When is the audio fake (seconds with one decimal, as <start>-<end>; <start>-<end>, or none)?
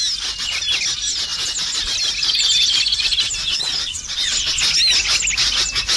3.4-4.6